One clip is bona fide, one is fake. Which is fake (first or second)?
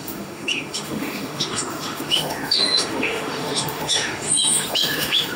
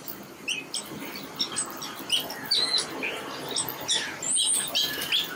first